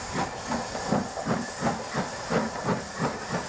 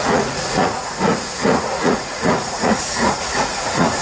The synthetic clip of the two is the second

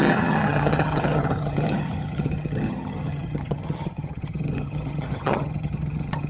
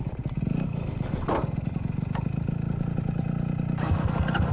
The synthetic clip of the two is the first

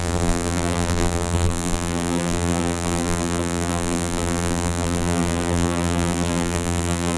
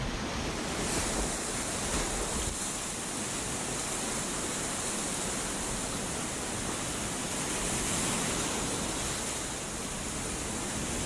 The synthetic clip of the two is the first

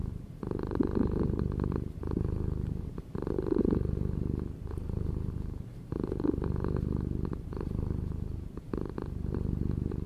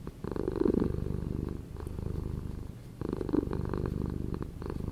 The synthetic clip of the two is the first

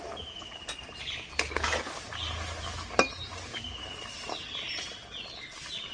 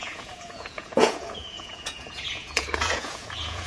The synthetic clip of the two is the second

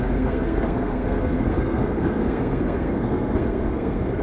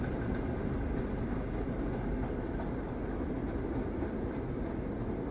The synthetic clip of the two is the first